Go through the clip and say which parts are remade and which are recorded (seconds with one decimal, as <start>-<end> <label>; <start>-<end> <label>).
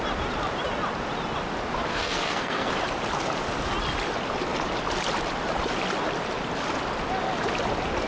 0.0-1.9 recorded; 1.9-2.7 remade; 2.7-8.1 recorded